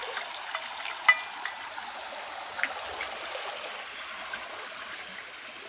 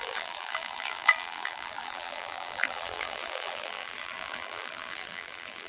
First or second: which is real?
first